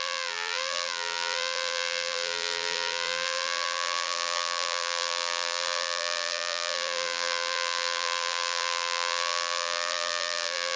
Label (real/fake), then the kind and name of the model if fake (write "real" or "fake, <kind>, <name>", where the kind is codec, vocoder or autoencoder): fake, vocoder, BigVGAN v2